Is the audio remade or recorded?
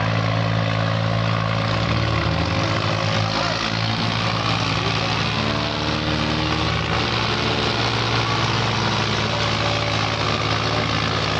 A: recorded